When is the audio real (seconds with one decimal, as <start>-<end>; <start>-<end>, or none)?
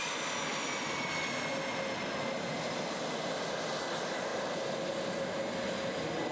0.0-6.3